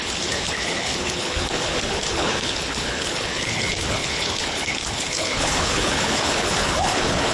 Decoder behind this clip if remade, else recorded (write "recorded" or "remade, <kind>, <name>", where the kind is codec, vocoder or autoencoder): remade, codec, HILCodec